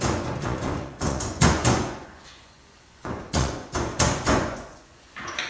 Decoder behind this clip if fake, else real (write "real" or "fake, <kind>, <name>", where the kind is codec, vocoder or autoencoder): fake, vocoder, Vocos